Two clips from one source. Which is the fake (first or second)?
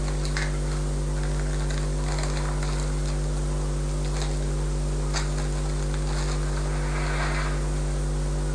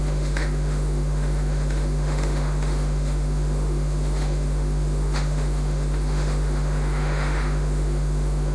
second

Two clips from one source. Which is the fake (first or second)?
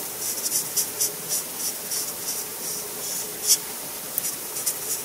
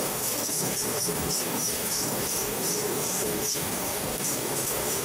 second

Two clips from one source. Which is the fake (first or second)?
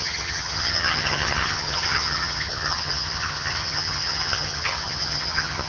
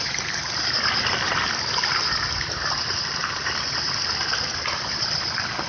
first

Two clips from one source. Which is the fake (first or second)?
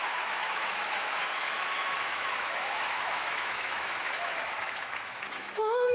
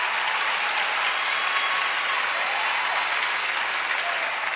first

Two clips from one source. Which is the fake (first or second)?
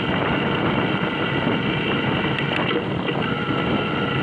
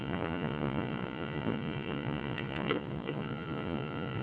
second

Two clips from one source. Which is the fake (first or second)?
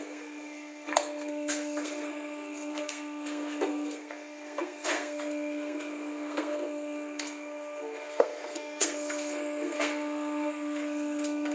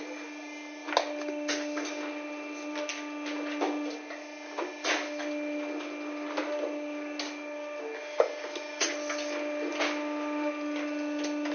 first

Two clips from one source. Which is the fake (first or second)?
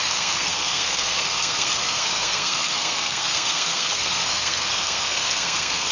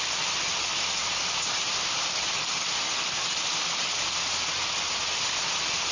first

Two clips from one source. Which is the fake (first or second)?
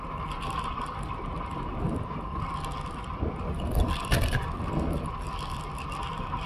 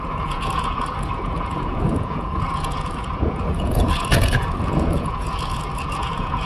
second